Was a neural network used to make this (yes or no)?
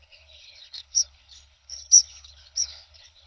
yes